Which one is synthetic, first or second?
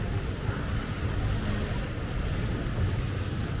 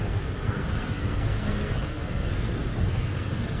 second